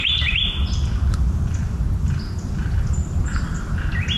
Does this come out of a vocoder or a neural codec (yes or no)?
no